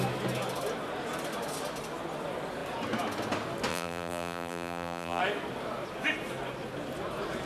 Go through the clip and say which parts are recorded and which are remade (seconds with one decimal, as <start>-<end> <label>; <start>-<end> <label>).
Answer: 0.0-3.7 recorded; 3.7-5.2 remade; 5.2-7.5 recorded